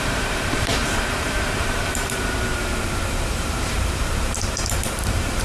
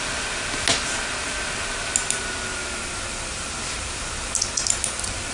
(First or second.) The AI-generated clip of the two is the first